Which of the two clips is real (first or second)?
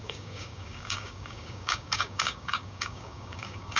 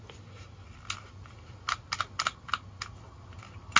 second